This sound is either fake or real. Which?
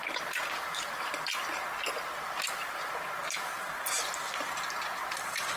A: real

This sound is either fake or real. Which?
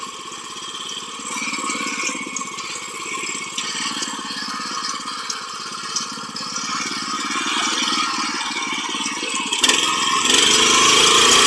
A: real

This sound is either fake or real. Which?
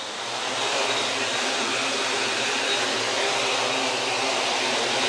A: real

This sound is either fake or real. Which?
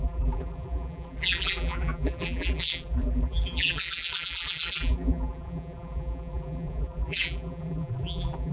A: fake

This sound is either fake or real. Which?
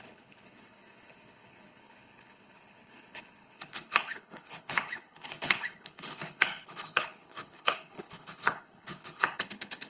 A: fake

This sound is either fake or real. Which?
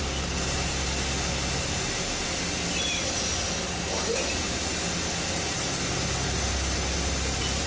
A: real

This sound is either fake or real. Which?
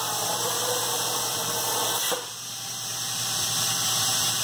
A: fake